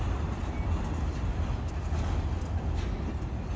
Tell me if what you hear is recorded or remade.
recorded